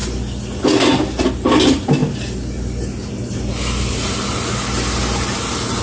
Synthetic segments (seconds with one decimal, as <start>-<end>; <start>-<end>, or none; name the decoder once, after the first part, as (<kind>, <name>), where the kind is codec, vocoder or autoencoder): none